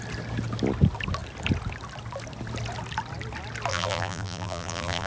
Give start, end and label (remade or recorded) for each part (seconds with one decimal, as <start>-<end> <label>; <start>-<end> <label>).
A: 0.0-3.7 recorded; 3.7-5.1 remade